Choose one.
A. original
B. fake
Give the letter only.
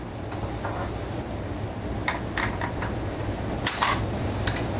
A